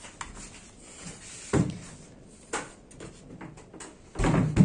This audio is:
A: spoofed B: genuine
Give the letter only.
B